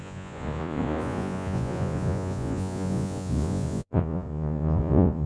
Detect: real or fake fake